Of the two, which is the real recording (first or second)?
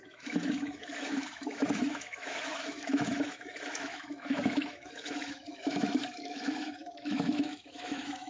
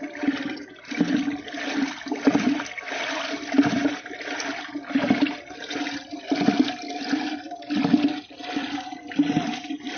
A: second